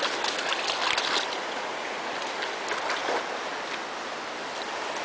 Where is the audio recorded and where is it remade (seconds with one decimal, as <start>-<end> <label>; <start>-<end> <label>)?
0.0-1.4 recorded; 1.4-2.1 remade; 2.1-5.0 recorded